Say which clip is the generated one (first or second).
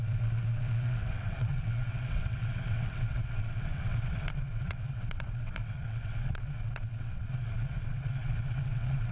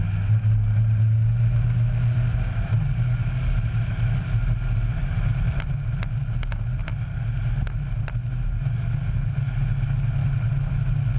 first